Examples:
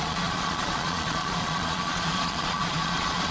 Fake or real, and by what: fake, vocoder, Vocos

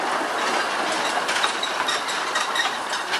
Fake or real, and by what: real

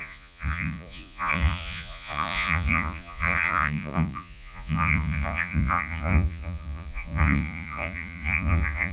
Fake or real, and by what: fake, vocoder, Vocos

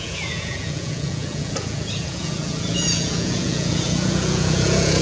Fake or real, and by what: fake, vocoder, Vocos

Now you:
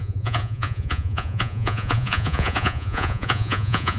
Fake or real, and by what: fake, vocoder, Vocos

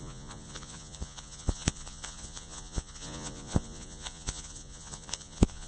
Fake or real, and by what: fake, vocoder, Vocos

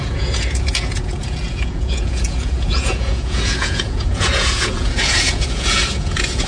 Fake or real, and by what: fake, vocoder, Vocos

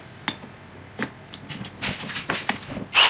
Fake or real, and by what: real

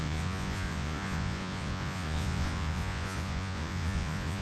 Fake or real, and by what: fake, vocoder, Vocos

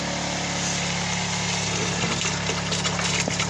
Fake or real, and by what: real